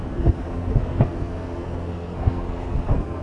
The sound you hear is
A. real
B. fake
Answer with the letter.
B